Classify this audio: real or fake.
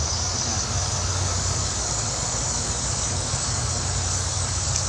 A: fake